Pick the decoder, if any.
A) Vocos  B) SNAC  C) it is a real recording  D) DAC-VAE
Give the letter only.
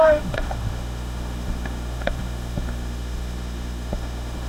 D